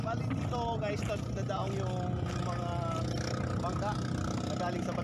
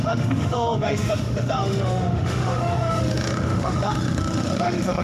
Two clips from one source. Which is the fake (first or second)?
second